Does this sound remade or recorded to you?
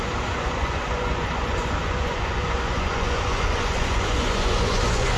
remade